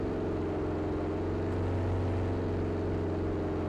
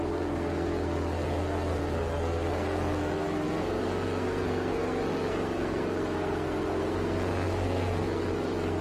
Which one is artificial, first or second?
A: second